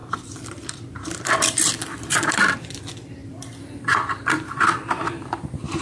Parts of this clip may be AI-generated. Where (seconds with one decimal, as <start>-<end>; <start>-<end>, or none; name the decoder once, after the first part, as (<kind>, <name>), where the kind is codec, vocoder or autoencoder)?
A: 0.0-2.6 (vocoder, BigVGAN v2); 3.2-5.3